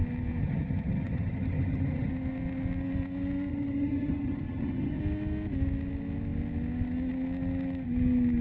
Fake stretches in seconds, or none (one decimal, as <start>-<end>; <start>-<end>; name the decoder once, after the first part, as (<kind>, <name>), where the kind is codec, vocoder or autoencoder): 0.4-2.1 (vocoder, HiFi-GAN); 3.5-5.0